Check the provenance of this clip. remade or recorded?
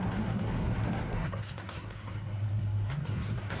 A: remade